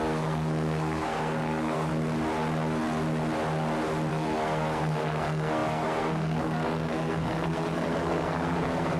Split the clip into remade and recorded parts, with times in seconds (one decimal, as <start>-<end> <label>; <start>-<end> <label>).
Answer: 0.0-1.9 remade; 1.9-4.1 recorded; 4.1-9.0 remade